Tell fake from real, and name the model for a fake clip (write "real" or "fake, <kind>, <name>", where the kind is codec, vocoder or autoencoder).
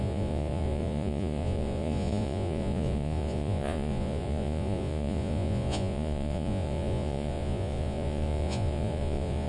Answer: fake, vocoder, Vocos